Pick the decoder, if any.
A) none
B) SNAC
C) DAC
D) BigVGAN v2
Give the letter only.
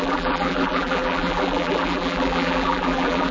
D